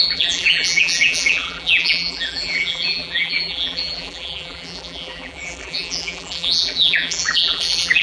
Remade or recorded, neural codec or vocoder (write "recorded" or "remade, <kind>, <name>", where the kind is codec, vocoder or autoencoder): remade, vocoder, BigVGAN v2